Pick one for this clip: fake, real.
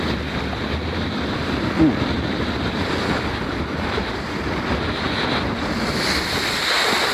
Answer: real